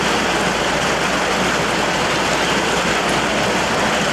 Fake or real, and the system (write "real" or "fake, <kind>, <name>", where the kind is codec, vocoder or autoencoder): real